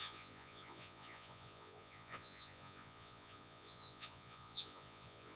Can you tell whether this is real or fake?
fake